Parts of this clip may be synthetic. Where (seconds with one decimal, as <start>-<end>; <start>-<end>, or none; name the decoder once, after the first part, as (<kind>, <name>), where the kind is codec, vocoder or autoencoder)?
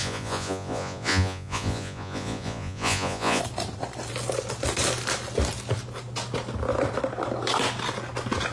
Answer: 0.0-3.4 (vocoder, Vocos)